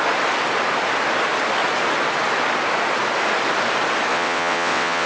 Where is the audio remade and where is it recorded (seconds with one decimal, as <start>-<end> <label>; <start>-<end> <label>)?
0.0-4.1 recorded; 4.1-5.1 remade